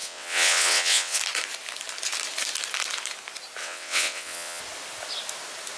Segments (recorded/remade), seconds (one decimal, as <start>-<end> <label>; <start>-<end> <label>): 0.0-1.2 remade; 1.2-3.6 recorded; 3.6-4.6 remade; 4.6-5.8 recorded